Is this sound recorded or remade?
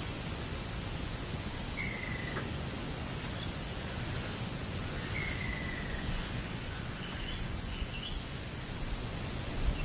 remade